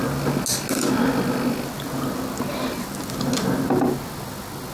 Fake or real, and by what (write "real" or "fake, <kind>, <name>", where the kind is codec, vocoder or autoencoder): real